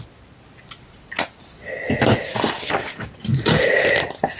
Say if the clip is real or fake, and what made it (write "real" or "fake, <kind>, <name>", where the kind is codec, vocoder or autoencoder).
real